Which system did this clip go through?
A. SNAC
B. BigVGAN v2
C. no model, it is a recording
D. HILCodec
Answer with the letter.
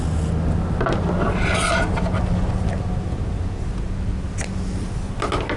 C